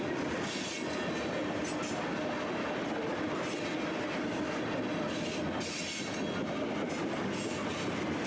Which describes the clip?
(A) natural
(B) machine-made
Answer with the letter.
A